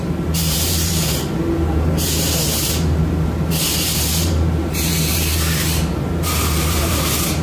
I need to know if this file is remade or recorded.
remade